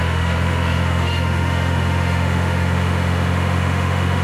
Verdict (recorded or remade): remade